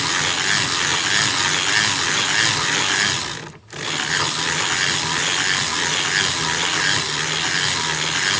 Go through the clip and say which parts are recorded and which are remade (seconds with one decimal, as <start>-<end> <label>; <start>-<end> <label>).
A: 0.0-8.4 recorded